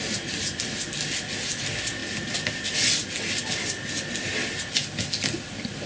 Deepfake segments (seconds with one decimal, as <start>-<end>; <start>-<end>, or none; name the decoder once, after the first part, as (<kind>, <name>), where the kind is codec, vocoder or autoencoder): none